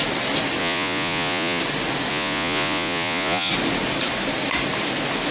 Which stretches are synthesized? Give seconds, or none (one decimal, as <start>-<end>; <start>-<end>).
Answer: 0.6-1.6; 2.1-3.5